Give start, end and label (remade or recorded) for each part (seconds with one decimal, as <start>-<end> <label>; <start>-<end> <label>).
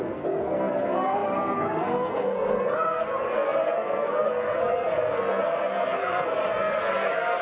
0.0-7.4 remade